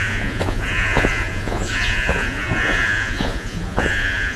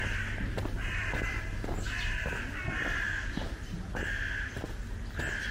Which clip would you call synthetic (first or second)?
first